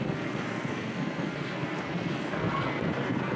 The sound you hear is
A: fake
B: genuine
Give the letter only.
A